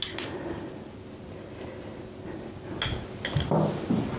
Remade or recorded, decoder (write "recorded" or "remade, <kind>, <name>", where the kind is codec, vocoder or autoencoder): recorded